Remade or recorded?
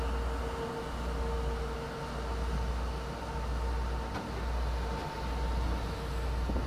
recorded